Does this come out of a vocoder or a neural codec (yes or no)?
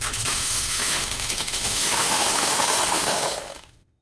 yes